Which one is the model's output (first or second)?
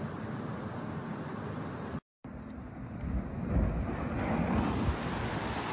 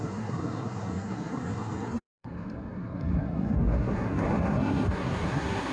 second